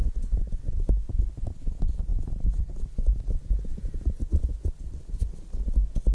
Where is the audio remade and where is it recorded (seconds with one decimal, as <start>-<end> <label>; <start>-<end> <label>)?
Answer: 0.0-6.1 recorded